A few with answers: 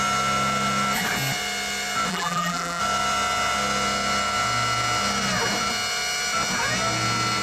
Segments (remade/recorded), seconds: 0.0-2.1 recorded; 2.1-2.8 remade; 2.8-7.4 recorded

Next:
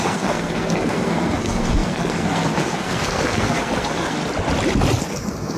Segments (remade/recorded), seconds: 0.0-4.2 remade; 4.2-5.0 recorded; 5.0-5.6 remade

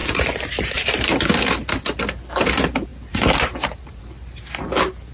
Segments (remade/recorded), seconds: 0.0-1.3 remade; 1.3-2.9 recorded; 2.9-4.0 remade; 4.0-5.1 recorded

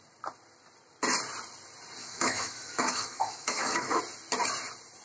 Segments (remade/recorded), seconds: 0.0-2.0 recorded; 2.0-4.0 remade; 4.0-5.0 recorded